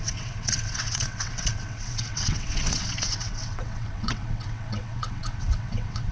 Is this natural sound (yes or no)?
no